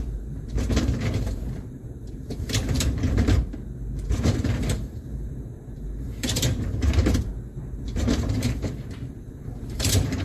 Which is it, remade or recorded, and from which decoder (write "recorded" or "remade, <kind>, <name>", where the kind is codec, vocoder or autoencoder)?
remade, vocoder, BigVGAN v2